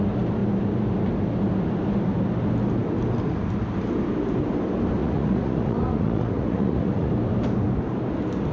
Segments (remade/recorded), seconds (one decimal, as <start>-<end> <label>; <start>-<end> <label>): 0.0-5.0 recorded; 5.0-7.1 remade; 7.1-8.5 recorded